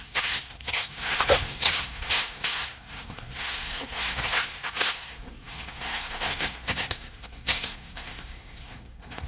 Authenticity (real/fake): fake